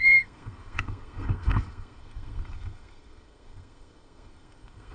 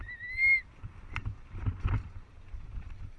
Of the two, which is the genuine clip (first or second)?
second